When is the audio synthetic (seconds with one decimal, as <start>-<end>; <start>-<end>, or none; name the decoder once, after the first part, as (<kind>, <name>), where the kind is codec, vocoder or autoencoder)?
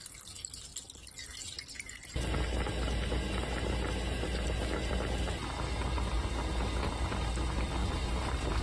7.8-8.6 (vocoder, BigVGAN v2)